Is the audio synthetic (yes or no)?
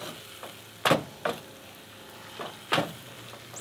no